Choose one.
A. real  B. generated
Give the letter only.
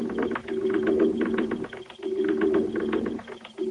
A